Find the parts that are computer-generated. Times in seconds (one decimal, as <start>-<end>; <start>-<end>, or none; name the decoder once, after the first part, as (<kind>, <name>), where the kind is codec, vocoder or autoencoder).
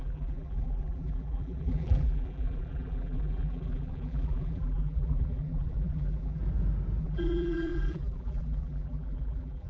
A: 0.0-6.4 (vocoder, BigVGAN v2); 7.0-9.7